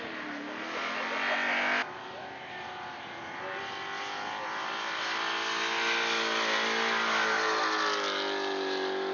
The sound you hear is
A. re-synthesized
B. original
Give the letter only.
B